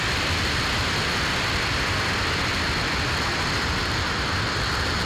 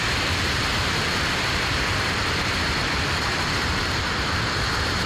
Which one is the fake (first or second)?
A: second